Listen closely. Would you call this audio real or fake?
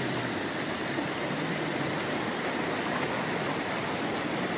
real